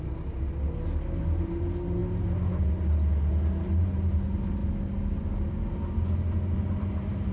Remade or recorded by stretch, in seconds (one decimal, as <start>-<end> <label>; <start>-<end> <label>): 0.0-7.3 recorded